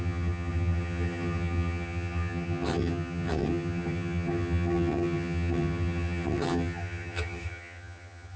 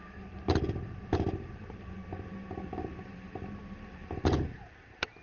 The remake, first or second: first